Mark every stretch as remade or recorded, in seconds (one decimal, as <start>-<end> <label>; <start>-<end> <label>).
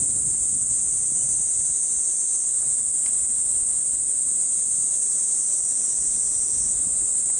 0.0-7.4 recorded